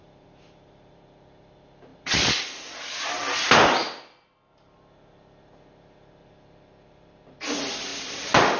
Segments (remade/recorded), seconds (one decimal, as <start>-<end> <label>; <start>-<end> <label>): 0.0-1.9 recorded; 1.9-2.7 remade; 2.7-8.6 recorded